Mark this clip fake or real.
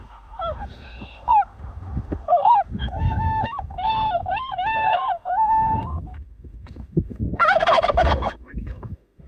fake